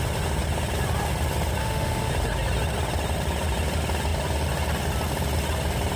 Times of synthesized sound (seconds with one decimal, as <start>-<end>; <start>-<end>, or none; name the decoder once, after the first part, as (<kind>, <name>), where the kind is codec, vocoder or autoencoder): 1.6-2.1 (autoencoder, DAC-VAE)